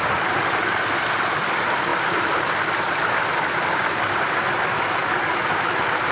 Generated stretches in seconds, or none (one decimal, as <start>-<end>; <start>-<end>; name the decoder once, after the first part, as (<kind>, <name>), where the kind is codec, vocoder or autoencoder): none